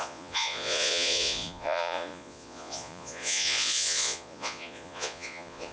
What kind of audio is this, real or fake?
fake